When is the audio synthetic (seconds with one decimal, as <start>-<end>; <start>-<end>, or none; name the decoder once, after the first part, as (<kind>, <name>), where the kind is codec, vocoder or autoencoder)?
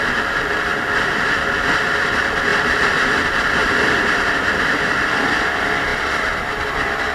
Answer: 0.7-1.6 (vocoder, BigVGAN v2); 2.5-5.4; 5.9-6.5